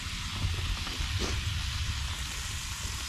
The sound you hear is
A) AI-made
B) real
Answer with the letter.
B